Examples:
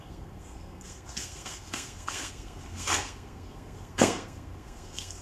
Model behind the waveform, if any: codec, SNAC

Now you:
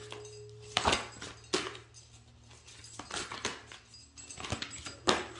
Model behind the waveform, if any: none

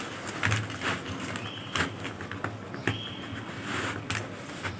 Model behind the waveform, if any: none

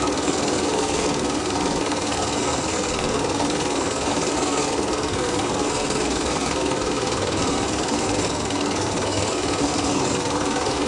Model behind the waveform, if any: codec, SNAC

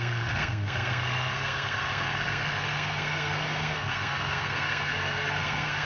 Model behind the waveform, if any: codec, SNAC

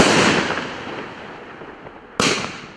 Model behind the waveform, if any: none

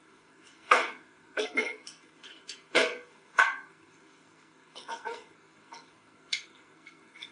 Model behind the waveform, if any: codec, SNAC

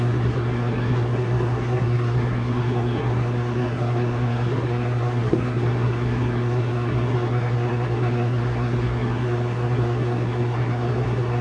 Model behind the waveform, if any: codec, SNAC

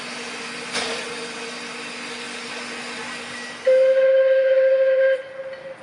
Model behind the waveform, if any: none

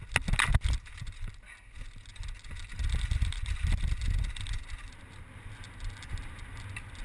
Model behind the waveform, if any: none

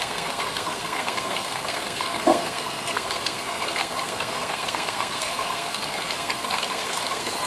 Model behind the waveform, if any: codec, SNAC